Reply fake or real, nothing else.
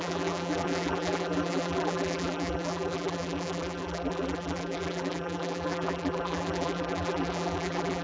fake